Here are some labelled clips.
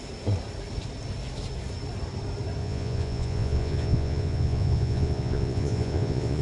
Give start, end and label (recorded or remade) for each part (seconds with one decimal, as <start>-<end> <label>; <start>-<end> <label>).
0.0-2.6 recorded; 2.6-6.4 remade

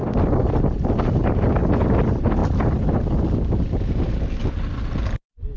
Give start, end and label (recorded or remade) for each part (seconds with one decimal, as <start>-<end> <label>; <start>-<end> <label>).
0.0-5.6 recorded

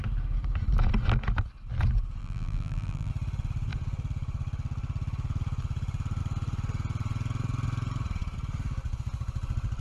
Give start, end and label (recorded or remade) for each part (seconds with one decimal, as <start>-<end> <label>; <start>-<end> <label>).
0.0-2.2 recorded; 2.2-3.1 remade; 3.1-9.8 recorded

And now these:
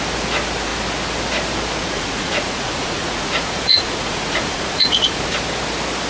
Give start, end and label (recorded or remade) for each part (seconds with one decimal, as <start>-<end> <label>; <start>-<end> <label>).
0.0-1.8 recorded; 1.8-5.2 remade; 5.2-6.1 recorded

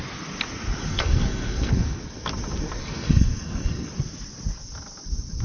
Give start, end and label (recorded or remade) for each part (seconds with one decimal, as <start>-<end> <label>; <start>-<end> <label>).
0.0-0.9 recorded; 0.9-2.0 remade; 2.0-2.8 recorded; 2.8-3.9 remade; 3.9-5.4 recorded